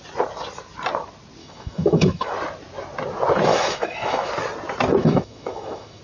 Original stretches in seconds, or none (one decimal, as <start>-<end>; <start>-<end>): 0.0-1.4; 2.3-3.5; 4.3-5.0